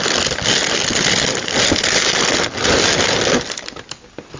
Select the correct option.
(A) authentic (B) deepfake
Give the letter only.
A